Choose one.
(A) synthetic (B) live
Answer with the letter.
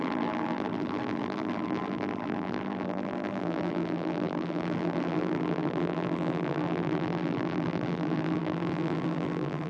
A